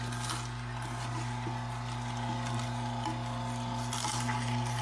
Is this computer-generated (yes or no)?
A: no